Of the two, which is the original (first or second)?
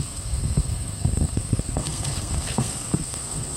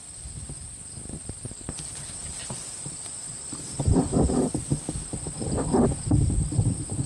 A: second